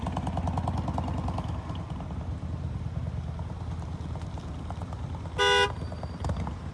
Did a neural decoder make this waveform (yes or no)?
no